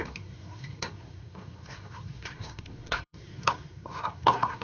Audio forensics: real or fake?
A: fake